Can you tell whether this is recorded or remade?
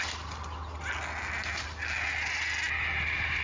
recorded